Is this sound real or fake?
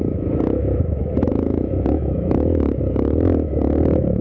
fake